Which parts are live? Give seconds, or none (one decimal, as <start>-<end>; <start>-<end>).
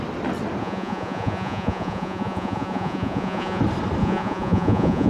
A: 0.0-0.6; 3.6-4.0